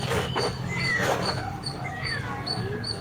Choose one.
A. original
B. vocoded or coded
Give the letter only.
B